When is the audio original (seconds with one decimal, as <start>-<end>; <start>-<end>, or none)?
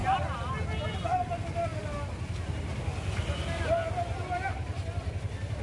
0.0-5.6